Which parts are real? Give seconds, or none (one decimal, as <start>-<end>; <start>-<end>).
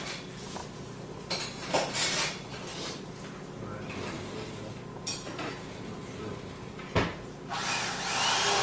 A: 0.6-1.7; 2.7-7.9